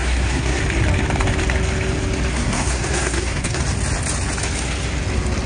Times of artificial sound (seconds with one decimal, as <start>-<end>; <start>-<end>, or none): 0.0-0.6; 2.3-3.6